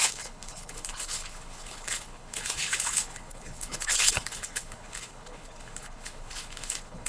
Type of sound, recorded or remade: remade